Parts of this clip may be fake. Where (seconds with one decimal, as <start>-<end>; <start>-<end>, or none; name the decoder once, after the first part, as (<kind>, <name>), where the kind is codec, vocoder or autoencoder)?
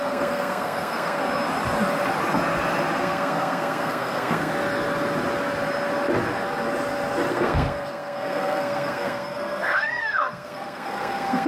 0.0-1.2 (codec, SNAC); 3.0-4.5; 7.3-11.5